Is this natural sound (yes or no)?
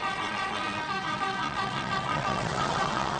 no